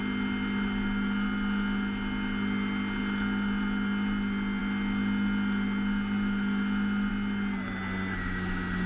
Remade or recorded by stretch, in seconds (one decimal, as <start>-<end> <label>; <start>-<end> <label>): 0.0-8.9 recorded